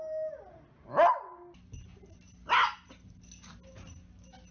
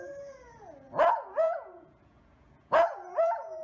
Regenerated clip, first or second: second